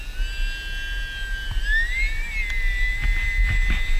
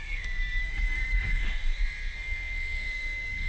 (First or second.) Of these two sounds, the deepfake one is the second